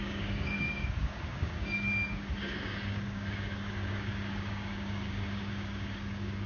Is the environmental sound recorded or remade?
remade